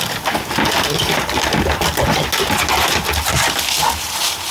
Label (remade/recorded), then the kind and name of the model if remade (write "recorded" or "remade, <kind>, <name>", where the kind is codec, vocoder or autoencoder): recorded